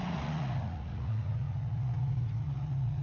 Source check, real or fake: fake